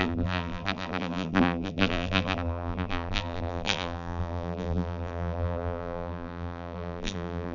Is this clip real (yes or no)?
no